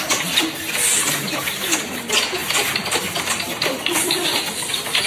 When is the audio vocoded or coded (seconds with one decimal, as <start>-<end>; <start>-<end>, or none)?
1.0-1.8